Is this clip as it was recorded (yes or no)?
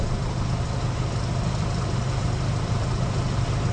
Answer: yes